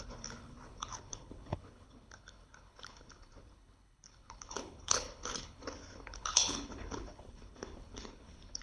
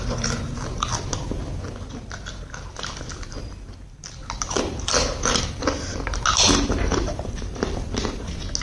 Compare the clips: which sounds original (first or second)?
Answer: second